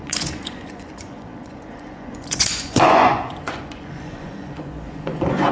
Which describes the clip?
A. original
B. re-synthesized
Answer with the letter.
B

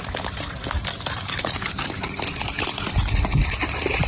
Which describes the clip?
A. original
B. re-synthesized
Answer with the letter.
A